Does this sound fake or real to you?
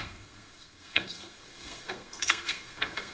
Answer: fake